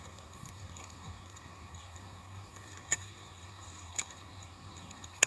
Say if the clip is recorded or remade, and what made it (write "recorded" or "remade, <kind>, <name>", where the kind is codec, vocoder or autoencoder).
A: remade, codec, SNAC